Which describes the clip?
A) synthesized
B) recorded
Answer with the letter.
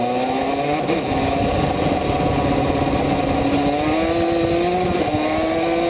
B